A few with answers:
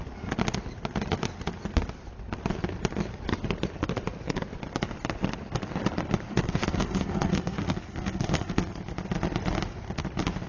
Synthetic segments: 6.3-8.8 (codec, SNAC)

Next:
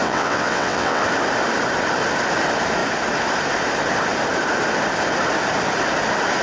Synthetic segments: 0.0-1.0 (vocoder, WaveNeXt)

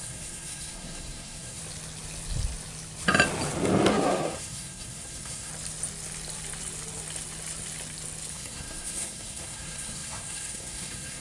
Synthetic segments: 0.0-1.6 (codec, SNAC); 3.9-5.5; 8.3-11.2

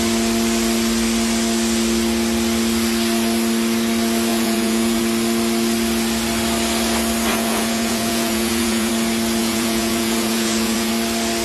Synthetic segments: 4.3-5.0 (vocoder, Vocos); 7.3-8.9; 9.4-10.9

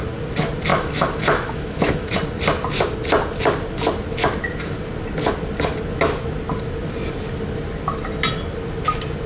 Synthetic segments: 0.7-2.1 (autoencoder, DAC-VAE)

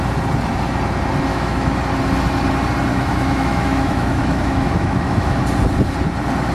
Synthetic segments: 1.3-1.8 (autoencoder, DAC-VAE); 2.9-5.4